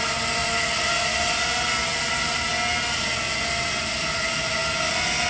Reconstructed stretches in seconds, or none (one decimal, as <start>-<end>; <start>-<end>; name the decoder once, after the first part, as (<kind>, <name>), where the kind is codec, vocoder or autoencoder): 0.0-0.4 (vocoder, BigVGAN v2); 2.0-2.7; 3.8-4.6